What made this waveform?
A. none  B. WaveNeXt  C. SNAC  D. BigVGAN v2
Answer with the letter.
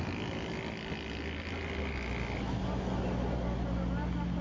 A